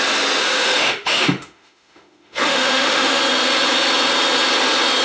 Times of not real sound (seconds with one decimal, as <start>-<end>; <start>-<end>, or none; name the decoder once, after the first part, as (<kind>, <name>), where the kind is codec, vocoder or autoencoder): 0.4-3.2 (autoencoder, DAC-VAE)